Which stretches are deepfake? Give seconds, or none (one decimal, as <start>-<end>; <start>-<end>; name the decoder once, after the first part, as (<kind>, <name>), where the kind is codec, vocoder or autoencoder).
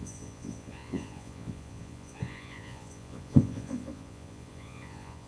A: 0.0-5.3 (vocoder, Vocos)